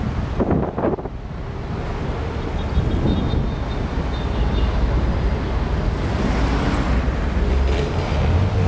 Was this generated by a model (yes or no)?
no